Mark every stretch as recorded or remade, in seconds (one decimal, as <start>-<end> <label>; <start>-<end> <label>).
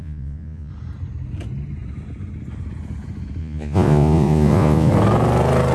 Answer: 0.0-0.7 remade; 0.7-3.4 recorded; 3.4-4.9 remade; 4.9-5.7 recorded